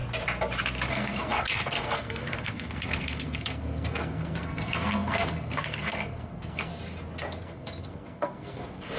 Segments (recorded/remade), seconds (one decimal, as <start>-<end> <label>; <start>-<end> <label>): 0.0-0.9 recorded; 0.9-6.7 remade; 6.7-7.2 recorded; 7.2-9.0 remade

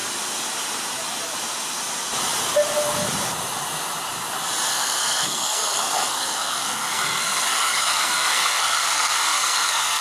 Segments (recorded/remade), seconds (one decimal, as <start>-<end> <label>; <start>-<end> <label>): 0.0-4.7 recorded; 4.7-10.0 remade

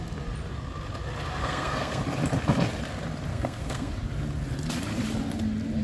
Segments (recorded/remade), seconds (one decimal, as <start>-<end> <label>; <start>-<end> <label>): 0.0-1.4 recorded; 1.4-2.0 remade; 2.0-3.3 recorded; 3.3-3.9 remade; 3.9-5.8 recorded

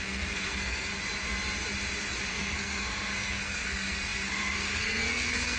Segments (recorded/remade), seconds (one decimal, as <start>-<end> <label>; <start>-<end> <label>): 0.0-0.9 remade; 0.9-2.3 recorded; 2.3-5.6 remade

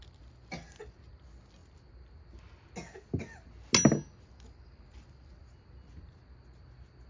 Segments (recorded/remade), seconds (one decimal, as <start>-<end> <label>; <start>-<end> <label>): 0.0-7.1 recorded

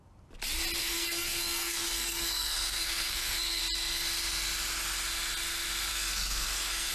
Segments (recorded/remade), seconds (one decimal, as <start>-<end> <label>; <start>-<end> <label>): 0.0-0.8 recorded; 0.8-3.6 remade; 3.6-5.9 recorded; 5.9-6.9 remade